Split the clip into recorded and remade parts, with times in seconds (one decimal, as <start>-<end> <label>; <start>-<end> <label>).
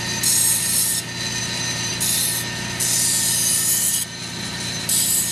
0.0-0.9 remade; 0.9-1.4 recorded; 1.4-1.9 remade; 1.9-4.3 recorded; 4.3-5.3 remade